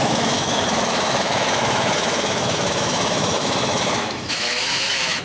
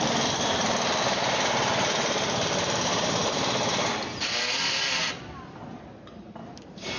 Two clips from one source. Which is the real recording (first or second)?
second